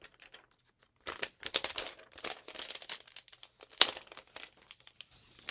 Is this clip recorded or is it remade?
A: recorded